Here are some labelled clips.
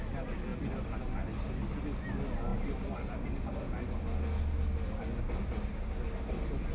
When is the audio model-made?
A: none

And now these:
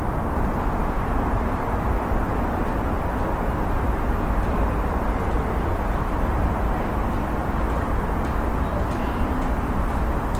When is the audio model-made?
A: none

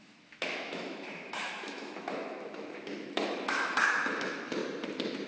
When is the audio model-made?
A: 0.0-4.6

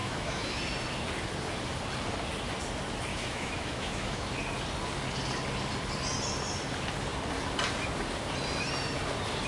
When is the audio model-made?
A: 0.0-0.6; 3.1-4.3

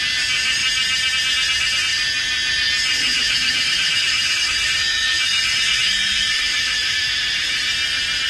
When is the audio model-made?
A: 3.0-7.0

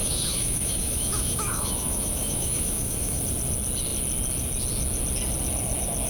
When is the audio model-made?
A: 0.0-3.2

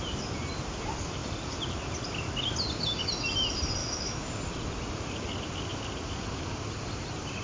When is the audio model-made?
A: 3.8-4.3